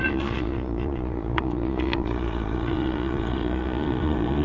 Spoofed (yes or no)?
yes